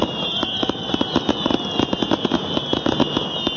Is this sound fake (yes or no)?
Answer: no